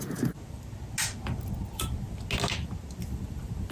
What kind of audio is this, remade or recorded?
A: recorded